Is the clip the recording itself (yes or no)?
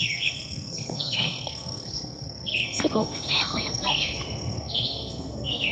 no